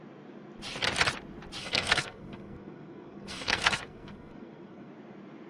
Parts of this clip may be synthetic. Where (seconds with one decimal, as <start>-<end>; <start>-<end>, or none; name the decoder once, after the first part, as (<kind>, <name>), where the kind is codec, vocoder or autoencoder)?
1.6-4.9 (codec, SNAC)